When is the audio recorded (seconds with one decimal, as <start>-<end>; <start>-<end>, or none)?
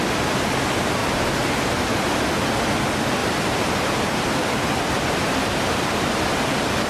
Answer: 0.0-3.2